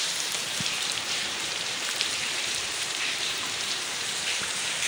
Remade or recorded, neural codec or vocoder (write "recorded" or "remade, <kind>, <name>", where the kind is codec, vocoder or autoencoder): remade, vocoder, BigVGAN v2